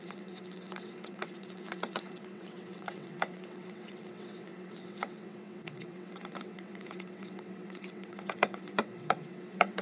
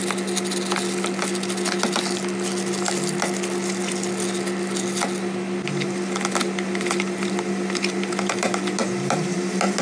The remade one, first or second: first